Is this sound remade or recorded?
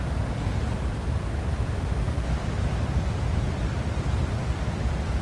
remade